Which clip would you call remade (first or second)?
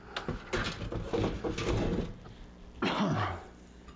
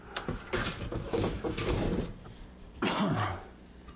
second